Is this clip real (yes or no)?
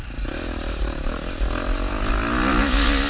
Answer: yes